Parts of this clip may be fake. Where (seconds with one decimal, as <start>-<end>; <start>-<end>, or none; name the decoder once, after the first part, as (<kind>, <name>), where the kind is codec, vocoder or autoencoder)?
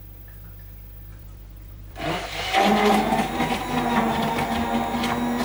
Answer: 1.1-2.3 (vocoder, BigVGAN v2)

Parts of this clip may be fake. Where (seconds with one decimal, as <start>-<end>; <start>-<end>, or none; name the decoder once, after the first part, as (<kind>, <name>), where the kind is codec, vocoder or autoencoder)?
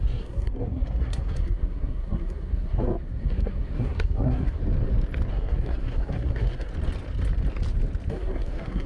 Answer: 0.0-4.6 (codec, SNAC); 5.3-6.7; 8.1-8.9